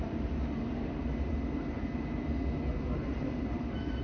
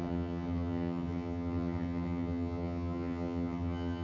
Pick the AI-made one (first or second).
second